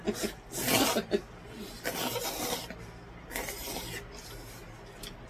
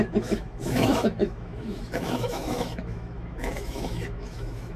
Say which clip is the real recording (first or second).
first